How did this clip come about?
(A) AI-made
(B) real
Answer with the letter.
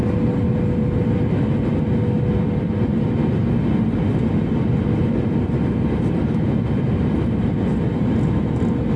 B